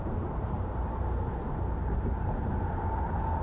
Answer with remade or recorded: recorded